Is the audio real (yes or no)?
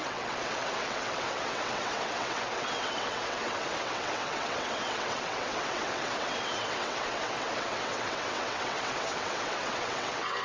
no